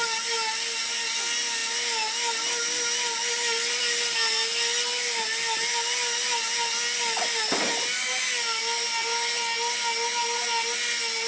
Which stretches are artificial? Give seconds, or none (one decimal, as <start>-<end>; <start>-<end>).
none